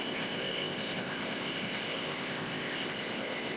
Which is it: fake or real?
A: fake